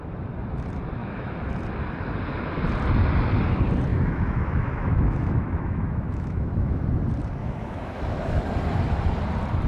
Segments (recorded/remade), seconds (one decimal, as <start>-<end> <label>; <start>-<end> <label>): 0.0-1.0 recorded; 1.0-1.5 remade; 1.5-3.9 recorded; 3.9-6.8 remade; 6.8-7.4 recorded; 7.4-8.4 remade; 8.4-9.7 recorded